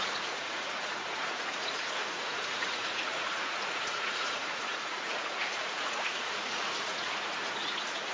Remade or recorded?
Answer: remade